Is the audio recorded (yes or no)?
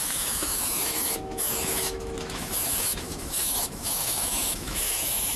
no